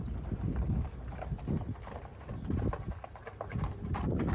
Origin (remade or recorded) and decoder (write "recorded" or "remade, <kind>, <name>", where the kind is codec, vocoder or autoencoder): recorded